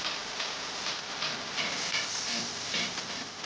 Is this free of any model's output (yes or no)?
yes